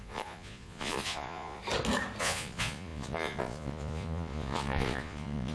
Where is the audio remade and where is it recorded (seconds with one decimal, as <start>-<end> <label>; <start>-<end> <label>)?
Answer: 0.0-1.6 remade; 1.6-2.2 recorded; 2.2-5.5 remade